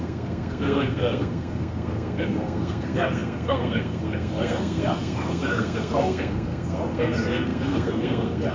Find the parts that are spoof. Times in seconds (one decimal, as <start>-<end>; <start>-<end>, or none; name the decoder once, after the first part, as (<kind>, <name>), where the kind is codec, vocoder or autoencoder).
0.0-8.5 (codec, SNAC)